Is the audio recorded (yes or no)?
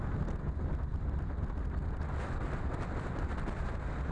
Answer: yes